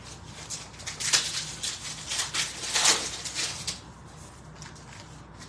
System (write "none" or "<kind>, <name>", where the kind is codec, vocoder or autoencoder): none